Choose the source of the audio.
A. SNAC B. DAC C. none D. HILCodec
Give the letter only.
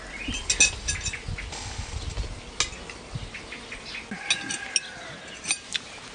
C